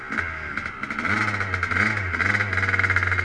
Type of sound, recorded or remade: recorded